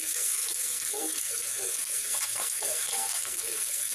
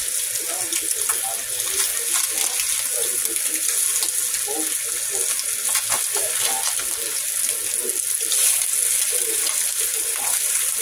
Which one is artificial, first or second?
first